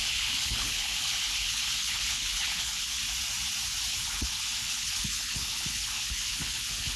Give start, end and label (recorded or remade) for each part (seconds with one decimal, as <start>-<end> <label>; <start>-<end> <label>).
0.0-3.0 remade; 3.0-3.9 recorded; 3.9-7.0 remade